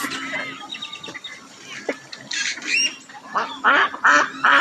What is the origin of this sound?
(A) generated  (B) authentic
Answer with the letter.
B